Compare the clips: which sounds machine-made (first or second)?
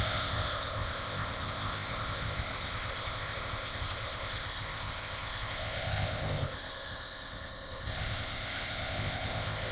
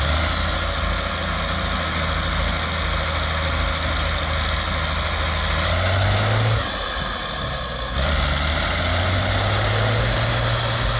first